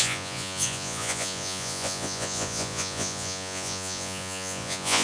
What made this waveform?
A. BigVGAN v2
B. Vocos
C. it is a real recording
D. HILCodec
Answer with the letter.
B